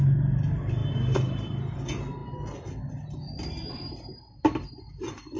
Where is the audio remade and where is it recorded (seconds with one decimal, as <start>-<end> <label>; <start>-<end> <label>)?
0.0-5.4 recorded